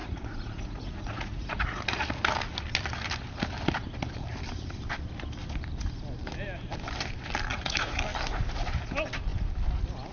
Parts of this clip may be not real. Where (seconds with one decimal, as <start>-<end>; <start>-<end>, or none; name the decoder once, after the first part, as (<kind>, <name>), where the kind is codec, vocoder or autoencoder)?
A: 0.0-1.8 (vocoder, Vocos); 7.5-8.0